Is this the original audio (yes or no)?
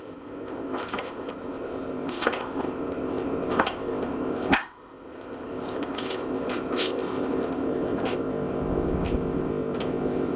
no